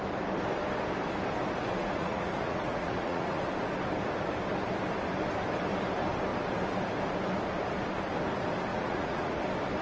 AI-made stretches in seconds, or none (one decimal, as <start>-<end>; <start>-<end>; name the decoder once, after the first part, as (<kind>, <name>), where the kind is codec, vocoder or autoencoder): 1.8-3.4 (vocoder, Vocos); 8.7-9.4